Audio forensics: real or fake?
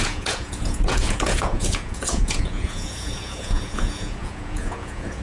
fake